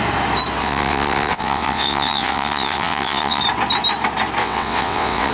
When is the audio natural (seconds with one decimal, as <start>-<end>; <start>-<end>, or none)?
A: 0.0-0.6; 3.4-4.4